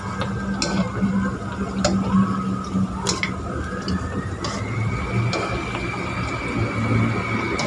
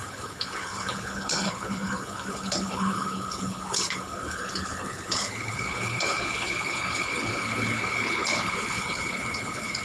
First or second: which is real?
first